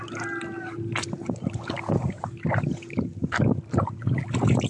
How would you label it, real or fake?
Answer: real